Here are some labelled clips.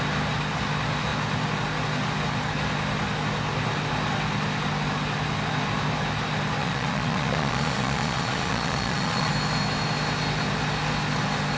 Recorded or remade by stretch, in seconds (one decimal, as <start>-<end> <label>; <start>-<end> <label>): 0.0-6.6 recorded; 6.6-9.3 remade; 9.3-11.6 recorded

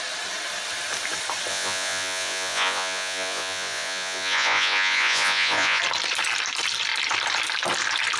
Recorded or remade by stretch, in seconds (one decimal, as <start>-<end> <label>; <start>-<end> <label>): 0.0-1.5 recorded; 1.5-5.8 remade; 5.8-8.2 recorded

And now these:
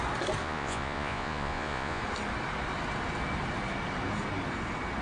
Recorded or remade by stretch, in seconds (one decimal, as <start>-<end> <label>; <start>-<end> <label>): 0.0-0.4 recorded; 0.4-2.0 remade; 2.0-5.0 recorded